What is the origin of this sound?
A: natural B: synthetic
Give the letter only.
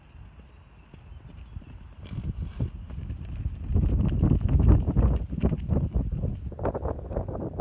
A